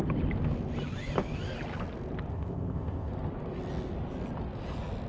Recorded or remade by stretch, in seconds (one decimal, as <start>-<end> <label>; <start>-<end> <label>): 0.0-2.3 recorded; 2.3-3.1 remade; 3.1-5.1 recorded